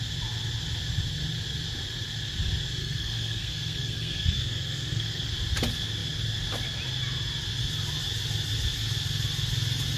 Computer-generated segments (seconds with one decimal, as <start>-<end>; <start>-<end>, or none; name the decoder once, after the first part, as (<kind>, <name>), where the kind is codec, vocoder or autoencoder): 2.8-5.3 (codec, SNAC)